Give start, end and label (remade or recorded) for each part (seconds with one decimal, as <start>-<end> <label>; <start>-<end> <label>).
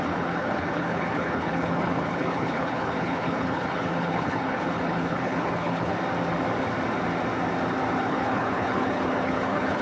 0.0-5.9 remade; 5.9-8.0 recorded; 8.0-9.8 remade